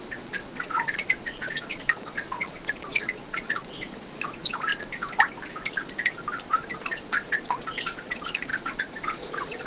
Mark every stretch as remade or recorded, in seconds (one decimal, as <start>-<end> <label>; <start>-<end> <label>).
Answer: 0.0-4.7 remade; 4.7-6.3 recorded; 6.3-9.7 remade